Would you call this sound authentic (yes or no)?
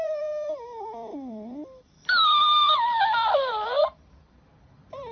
no